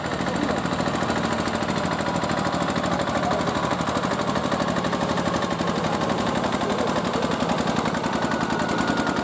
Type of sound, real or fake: real